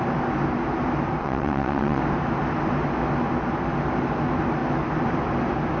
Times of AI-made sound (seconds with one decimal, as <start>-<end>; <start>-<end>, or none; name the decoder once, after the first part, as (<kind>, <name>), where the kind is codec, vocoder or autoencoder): 1.2-2.0 (vocoder, WaveNeXt)